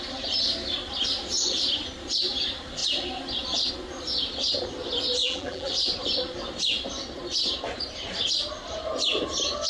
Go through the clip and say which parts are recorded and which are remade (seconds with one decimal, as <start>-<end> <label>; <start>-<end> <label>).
0.0-5.2 recorded; 5.2-5.7 remade; 5.7-9.7 recorded